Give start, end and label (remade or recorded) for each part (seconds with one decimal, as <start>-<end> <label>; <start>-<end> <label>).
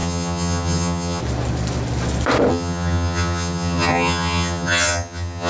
0.0-1.2 remade; 1.2-2.5 recorded; 2.5-5.5 remade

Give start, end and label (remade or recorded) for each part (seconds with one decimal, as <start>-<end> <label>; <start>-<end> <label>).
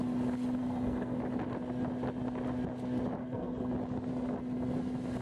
0.0-0.6 recorded; 0.6-1.2 remade; 1.2-3.2 recorded; 3.2-3.7 remade; 3.7-5.2 recorded